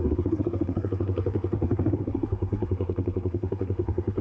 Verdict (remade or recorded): remade